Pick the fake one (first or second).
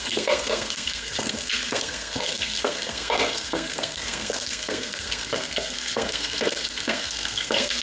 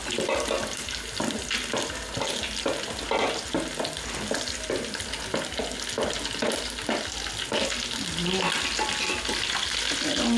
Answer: first